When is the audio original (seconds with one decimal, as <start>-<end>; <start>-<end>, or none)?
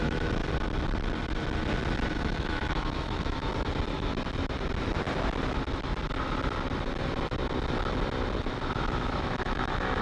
0.4-2.1; 3.5-8.6